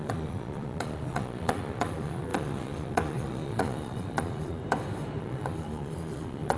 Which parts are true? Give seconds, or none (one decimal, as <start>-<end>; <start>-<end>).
4.6-5.2